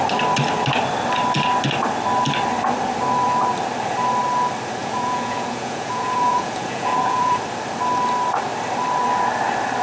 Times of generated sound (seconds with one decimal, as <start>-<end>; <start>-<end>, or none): 4.8-7.4